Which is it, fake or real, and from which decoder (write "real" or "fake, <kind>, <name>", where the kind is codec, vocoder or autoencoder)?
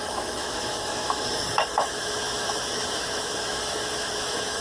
fake, autoencoder, DAC-VAE